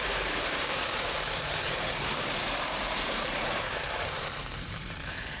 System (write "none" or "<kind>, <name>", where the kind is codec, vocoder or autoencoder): vocoder, BigVGAN v2